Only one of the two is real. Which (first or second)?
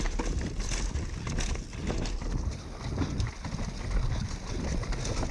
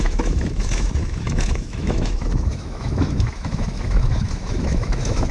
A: first